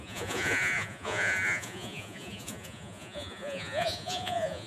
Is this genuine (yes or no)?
no